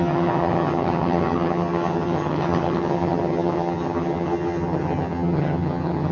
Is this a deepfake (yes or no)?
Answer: yes